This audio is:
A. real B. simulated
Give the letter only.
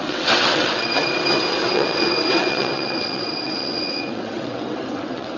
B